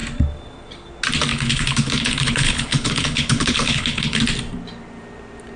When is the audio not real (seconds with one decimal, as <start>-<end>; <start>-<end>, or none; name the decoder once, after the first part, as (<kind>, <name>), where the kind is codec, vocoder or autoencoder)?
1.3-4.2 (codec, HILCodec)